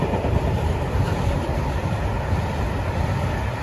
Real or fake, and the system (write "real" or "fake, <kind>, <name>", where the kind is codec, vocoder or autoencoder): fake, vocoder, BigVGAN v2